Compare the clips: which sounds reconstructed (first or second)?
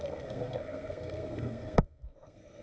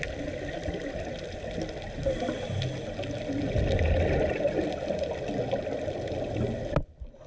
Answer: first